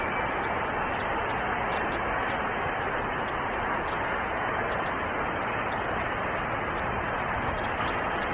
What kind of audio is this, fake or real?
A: real